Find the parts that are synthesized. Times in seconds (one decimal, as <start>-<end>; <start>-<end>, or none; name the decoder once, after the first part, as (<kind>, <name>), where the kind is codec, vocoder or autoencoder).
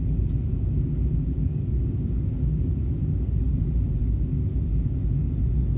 0.5-3.5 (codec, DAC); 4.0-5.3